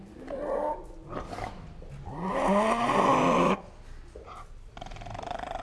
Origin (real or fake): real